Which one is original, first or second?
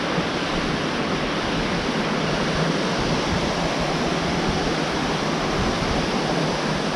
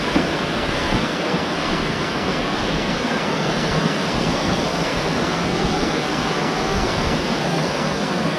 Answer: first